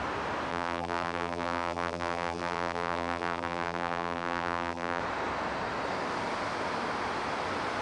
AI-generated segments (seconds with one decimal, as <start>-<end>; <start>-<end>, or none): 0.5-5.0